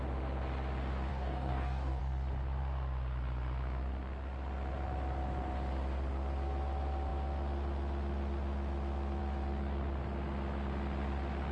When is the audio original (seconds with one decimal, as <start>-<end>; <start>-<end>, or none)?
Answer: 0.0-1.1; 2.0-11.5